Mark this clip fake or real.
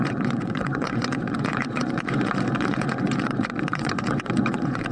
fake